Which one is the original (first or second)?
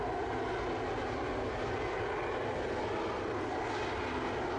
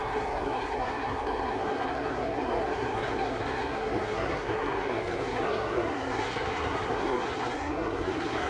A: first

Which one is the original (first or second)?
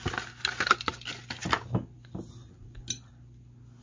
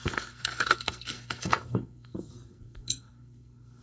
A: first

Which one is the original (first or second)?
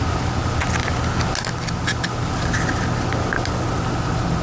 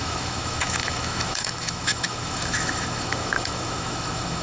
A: first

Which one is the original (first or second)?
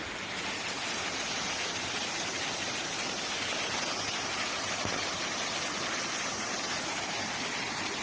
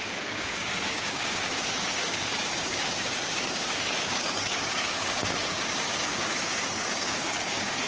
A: first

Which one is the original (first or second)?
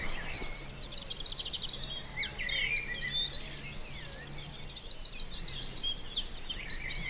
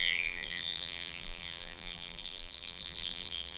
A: first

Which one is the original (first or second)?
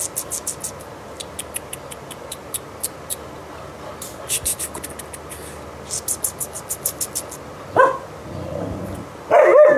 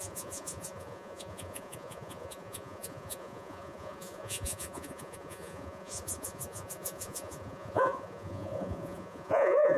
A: first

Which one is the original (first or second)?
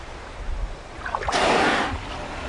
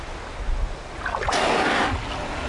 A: second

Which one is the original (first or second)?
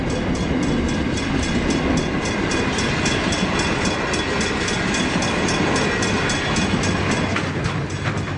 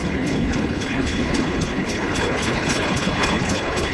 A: first